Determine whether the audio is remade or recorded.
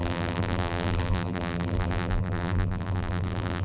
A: remade